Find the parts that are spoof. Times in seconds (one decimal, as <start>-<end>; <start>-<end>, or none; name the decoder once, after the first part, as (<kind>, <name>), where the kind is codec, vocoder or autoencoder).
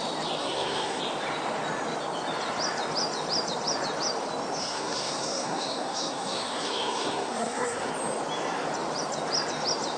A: 0.4-1.0 (codec, SNAC); 4.6-7.9